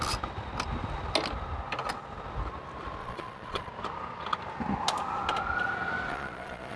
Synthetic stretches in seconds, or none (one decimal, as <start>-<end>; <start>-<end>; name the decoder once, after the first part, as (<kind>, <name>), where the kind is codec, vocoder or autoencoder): 3.0-3.7 (vocoder, Vocos); 6.1-6.8

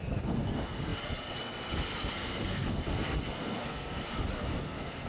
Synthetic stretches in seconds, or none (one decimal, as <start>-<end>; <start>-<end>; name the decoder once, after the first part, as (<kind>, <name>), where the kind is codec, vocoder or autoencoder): 0.0-4.1 (codec, SNAC); 4.6-5.1

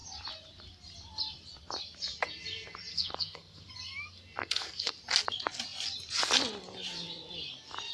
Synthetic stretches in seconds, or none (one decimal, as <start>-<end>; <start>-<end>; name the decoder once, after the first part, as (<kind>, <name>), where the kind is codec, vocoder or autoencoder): 2.9-3.7 (codec, SNAC); 4.4-4.9

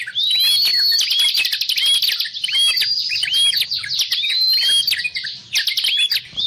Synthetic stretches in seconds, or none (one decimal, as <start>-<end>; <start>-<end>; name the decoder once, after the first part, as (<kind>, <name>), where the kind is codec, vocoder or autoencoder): none

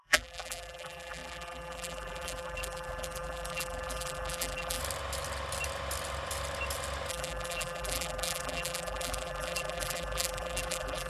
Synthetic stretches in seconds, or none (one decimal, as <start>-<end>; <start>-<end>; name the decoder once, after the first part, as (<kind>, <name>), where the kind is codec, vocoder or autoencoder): 0.0-4.8 (vocoder, BigVGAN v2); 7.1-11.1